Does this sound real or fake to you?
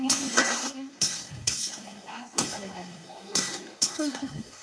fake